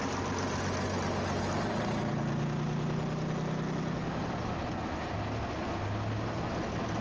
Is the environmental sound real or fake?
real